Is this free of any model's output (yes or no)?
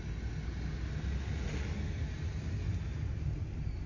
yes